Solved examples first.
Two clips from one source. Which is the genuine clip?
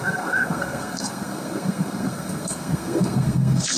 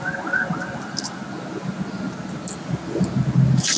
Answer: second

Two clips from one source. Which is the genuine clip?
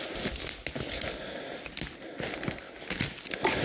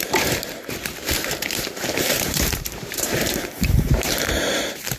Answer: first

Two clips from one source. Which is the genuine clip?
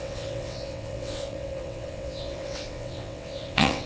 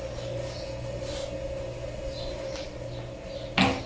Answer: second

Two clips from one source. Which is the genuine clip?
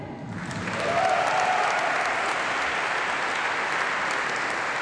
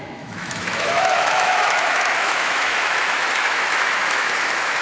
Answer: first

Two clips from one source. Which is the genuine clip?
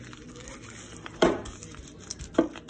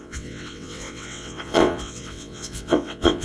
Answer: first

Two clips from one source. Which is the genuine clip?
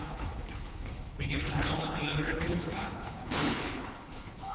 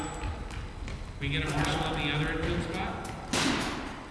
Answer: second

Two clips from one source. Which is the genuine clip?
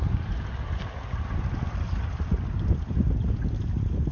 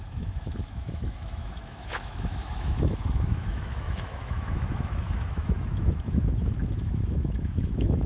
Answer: first